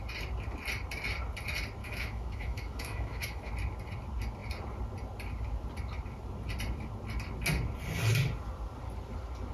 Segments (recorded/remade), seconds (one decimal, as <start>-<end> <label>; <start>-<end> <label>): 0.0-1.8 recorded; 1.8-3.5 remade; 3.5-9.5 recorded